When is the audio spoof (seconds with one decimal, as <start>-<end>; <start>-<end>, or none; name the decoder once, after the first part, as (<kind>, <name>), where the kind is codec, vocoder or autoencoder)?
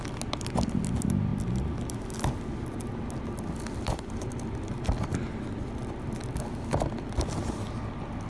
1.3-4.2 (vocoder, BigVGAN v2)